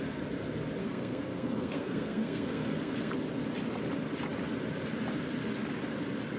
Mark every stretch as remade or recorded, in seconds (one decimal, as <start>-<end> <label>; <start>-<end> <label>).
0.0-0.8 recorded; 0.8-3.1 remade; 3.1-6.4 recorded